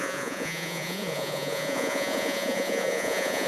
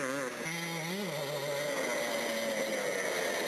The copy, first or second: first